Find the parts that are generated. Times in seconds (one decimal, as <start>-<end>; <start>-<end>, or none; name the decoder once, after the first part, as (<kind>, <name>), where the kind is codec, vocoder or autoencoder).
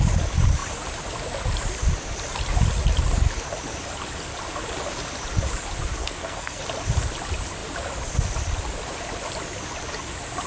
6.0-6.6 (codec, SNAC)